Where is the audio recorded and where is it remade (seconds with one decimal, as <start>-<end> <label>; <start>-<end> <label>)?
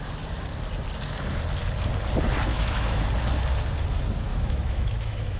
0.0-2.5 recorded; 2.5-3.1 remade; 3.1-4.3 recorded; 4.3-5.4 remade